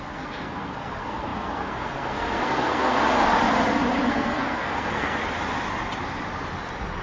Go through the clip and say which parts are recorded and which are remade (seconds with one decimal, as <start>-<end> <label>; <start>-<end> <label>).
0.0-3.0 remade; 3.0-4.0 recorded; 4.0-5.2 remade; 5.2-7.0 recorded